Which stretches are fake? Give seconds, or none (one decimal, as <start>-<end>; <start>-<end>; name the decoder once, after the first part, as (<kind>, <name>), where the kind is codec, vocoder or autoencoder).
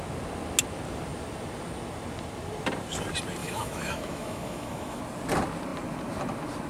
3.4-5.0 (autoencoder, DAC-VAE)